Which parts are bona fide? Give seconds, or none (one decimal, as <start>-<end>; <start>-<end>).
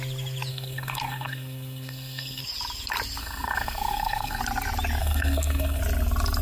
0.0-0.5; 2.4-3.2; 4.4-5.0; 5.8-6.4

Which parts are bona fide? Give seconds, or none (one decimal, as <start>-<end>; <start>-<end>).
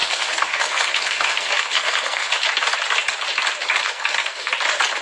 2.3-3.8; 4.5-5.0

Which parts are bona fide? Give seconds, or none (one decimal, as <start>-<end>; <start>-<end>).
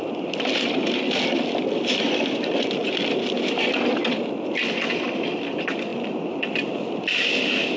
0.0-7.8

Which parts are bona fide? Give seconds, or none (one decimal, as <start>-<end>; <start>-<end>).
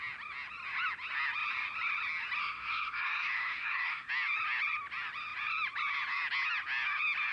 0.0-2.4; 4.1-7.3